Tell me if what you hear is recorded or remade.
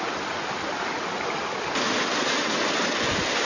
recorded